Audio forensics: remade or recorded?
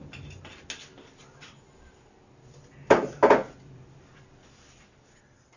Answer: recorded